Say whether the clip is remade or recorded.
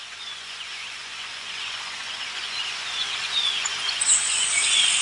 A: remade